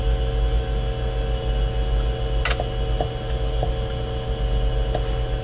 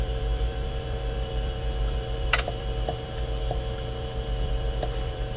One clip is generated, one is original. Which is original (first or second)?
first